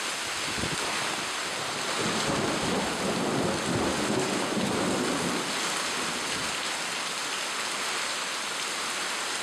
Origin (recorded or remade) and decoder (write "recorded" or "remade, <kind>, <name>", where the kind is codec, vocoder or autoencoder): recorded